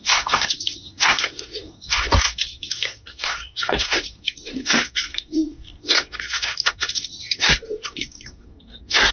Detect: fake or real fake